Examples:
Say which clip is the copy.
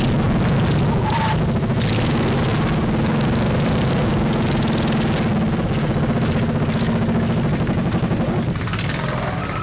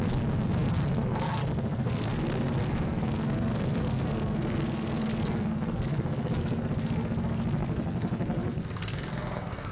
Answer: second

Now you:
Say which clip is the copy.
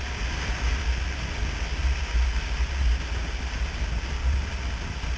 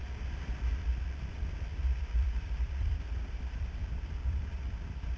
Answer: second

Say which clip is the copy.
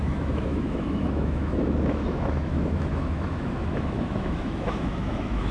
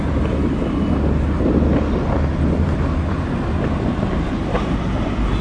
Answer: first